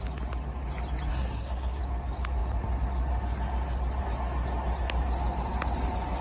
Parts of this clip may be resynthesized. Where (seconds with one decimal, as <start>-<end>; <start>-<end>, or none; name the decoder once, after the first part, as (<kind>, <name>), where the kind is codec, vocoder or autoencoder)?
1.1-1.8 (codec, SNAC)